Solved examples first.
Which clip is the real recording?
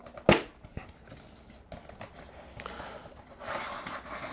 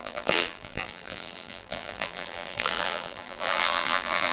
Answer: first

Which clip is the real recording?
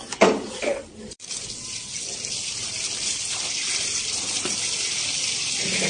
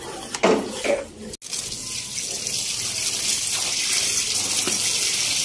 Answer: second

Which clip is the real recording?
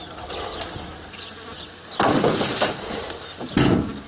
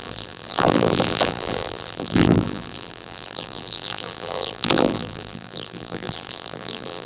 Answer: first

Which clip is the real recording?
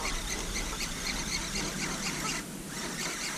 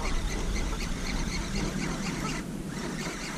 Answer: first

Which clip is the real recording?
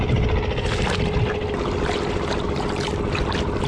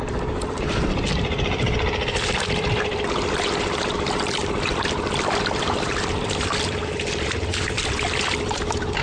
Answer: first